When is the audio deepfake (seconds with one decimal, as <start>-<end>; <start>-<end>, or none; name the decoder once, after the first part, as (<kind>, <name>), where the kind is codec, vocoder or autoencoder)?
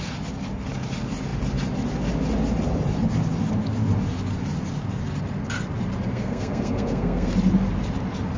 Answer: 6.1-7.3 (codec, SNAC)